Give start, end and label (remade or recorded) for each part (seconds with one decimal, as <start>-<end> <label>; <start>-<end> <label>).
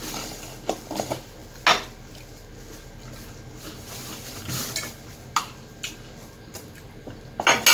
0.0-7.7 recorded